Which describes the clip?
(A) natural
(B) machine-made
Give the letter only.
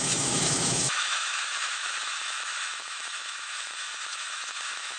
B